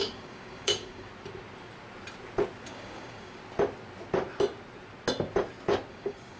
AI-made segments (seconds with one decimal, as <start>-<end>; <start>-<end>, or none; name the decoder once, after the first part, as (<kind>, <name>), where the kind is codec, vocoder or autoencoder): 0.0-1.1 (codec, DAC); 2.7-3.4; 5.9-6.4